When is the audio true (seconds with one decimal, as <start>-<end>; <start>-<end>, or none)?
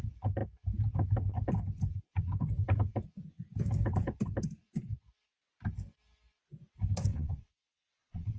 0.0-7.1